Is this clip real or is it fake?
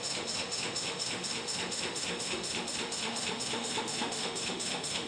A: fake